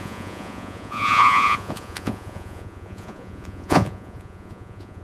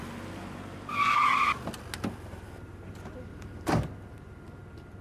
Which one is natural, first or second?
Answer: second